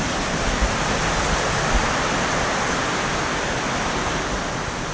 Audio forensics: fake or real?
real